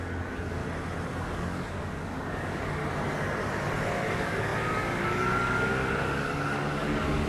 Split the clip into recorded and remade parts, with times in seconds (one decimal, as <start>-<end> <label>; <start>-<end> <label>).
0.0-0.6 remade; 0.6-1.2 recorded; 1.2-2.8 remade; 2.8-3.9 recorded; 3.9-7.3 remade